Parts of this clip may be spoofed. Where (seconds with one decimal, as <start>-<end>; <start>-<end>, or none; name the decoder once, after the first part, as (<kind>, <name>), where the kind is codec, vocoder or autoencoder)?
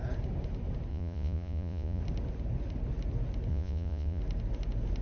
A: 0.9-2.0 (vocoder, Vocos); 3.5-4.2